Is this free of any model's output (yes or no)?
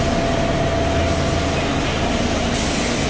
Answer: yes